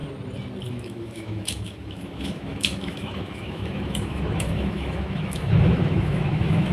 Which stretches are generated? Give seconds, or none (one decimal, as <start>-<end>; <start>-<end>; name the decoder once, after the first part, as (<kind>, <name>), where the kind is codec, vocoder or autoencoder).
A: 0.7-6.7 (autoencoder, DAC-VAE)